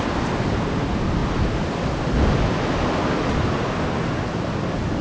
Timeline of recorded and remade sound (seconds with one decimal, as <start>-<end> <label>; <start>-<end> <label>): 0.0-5.0 recorded